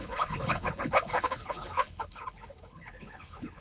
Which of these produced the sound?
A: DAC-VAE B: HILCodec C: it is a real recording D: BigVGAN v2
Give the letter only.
B